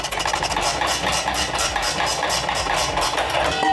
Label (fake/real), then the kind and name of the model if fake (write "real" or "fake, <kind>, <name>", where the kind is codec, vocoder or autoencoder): real